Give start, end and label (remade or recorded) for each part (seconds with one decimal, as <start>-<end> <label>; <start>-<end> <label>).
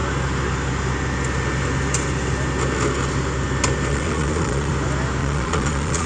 0.0-3.9 recorded; 3.9-4.7 remade; 4.7-5.2 recorded; 5.2-6.1 remade